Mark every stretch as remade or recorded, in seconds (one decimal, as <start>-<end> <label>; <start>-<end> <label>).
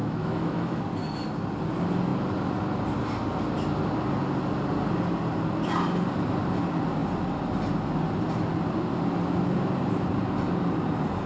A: 0.0-0.8 remade; 0.8-11.3 recorded